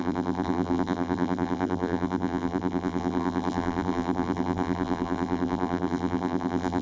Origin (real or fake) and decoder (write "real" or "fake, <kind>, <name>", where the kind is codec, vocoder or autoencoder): fake, vocoder, BigVGAN v2